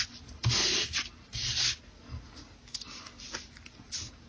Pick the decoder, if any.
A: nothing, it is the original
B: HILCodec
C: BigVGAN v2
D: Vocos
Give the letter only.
A